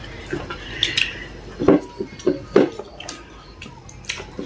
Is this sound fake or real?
real